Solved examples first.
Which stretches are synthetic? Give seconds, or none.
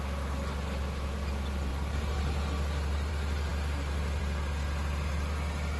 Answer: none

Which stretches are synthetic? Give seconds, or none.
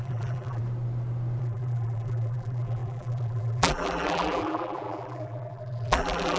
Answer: 0.0-0.6; 1.4-6.4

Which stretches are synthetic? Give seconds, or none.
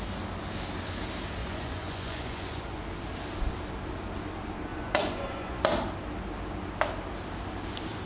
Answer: 1.4-2.8; 4.7-5.6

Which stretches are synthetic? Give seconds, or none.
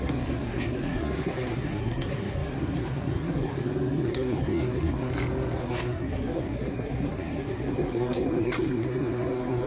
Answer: 0.0-5.1; 5.6-9.7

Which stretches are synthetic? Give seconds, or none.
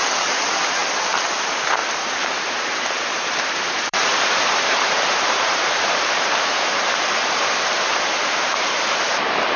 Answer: 0.0-0.8; 1.4-9.6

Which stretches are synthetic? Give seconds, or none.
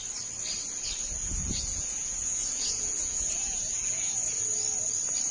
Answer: 1.2-4.4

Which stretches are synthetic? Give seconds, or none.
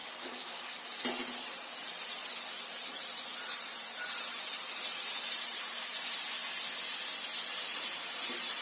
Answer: 0.0-6.4; 7.8-8.6